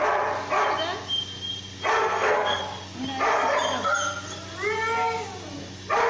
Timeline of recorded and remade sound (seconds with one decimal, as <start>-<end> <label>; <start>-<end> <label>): 0.0-2.0 recorded; 2.0-2.6 remade; 2.6-6.1 recorded